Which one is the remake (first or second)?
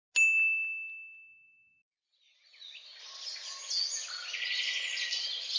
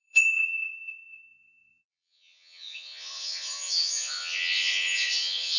second